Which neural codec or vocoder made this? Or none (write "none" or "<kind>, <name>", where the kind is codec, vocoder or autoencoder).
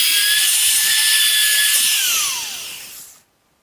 none